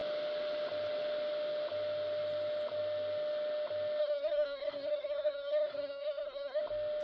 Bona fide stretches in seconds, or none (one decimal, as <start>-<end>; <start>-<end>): 0.0-4.0; 6.6-7.0